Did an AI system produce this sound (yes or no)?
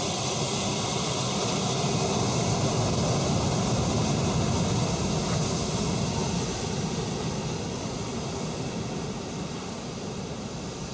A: no